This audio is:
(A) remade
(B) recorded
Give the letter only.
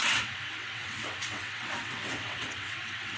A